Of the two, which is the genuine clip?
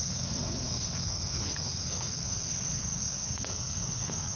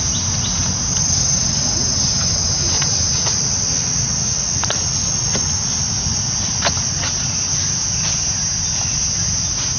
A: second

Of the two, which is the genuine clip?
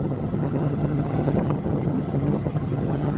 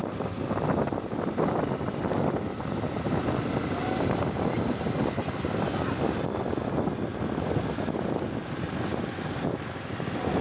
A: second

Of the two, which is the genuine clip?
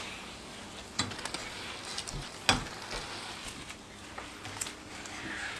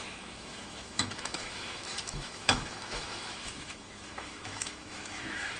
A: first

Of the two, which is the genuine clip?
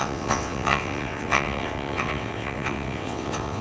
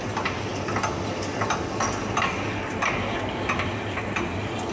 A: second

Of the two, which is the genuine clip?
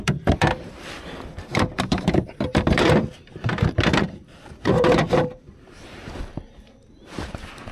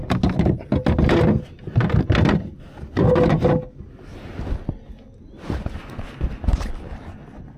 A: second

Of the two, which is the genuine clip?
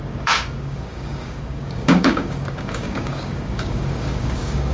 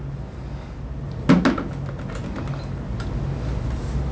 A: second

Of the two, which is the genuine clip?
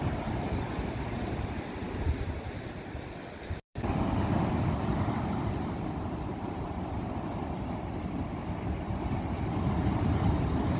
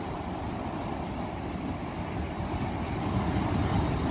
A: second